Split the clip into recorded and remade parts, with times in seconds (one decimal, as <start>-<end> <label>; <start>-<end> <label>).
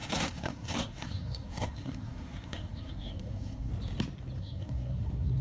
0.0-3.7 remade; 3.7-4.4 recorded; 4.4-5.4 remade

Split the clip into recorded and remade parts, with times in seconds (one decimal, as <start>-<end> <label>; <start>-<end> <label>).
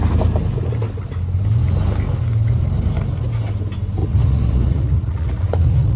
0.0-4.0 recorded; 4.0-6.0 remade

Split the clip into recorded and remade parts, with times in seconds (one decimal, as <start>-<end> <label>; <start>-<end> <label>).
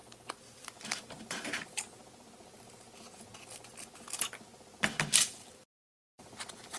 0.0-2.0 remade; 2.0-6.1 recorded; 6.1-6.8 remade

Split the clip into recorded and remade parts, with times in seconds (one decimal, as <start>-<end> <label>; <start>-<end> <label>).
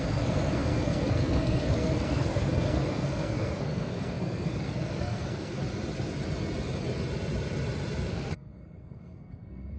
0.0-5.6 remade; 5.6-8.1 recorded; 8.1-9.8 remade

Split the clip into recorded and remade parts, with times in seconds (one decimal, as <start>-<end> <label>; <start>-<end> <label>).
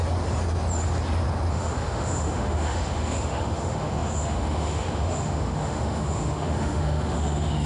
0.0-1.5 recorded; 1.5-7.7 remade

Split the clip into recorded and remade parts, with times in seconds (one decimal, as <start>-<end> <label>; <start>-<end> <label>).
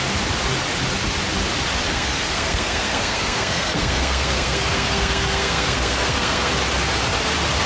0.0-1.9 recorded; 1.9-6.5 remade; 6.5-7.7 recorded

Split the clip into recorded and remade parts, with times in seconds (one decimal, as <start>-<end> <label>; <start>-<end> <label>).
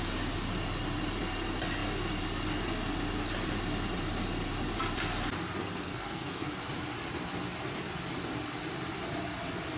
0.0-5.6 recorded; 5.6-6.6 remade; 6.6-9.8 recorded